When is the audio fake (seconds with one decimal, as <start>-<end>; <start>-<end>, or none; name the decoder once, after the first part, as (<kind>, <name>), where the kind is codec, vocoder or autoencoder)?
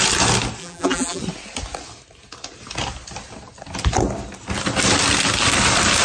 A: 0.6-1.2 (vocoder, BigVGAN v2)